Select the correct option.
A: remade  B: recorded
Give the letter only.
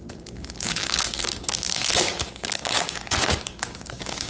A